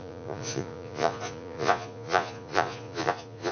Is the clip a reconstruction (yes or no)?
yes